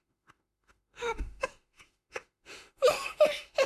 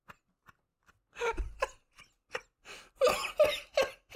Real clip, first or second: second